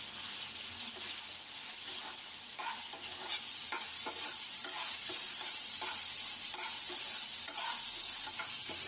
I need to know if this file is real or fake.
real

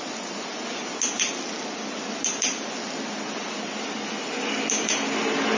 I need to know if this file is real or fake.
real